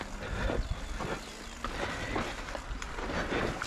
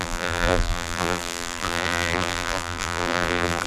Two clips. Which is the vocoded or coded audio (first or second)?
second